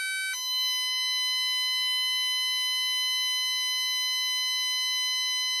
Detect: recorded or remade recorded